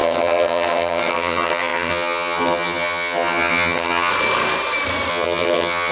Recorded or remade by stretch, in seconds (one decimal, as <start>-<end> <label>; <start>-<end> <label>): 0.0-4.1 remade; 4.1-5.1 recorded; 5.1-5.9 remade